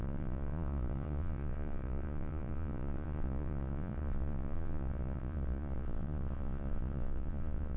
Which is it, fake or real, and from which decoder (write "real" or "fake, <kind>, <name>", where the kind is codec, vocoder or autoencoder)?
fake, vocoder, Vocos